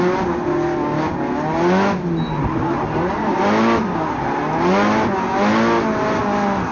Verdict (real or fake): real